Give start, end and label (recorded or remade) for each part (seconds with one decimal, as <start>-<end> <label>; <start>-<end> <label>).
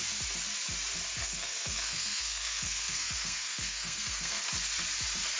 0.0-1.2 recorded; 1.2-4.4 remade; 4.4-5.4 recorded